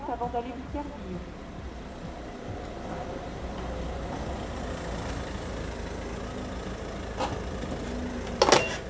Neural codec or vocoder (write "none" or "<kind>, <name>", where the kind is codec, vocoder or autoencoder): none